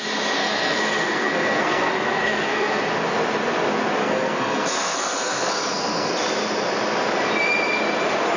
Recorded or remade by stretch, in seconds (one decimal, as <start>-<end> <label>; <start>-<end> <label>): 0.0-0.4 recorded; 0.4-2.8 remade; 2.8-4.0 recorded; 4.0-6.1 remade; 6.1-8.4 recorded